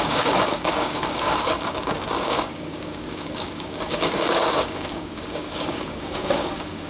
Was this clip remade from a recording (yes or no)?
yes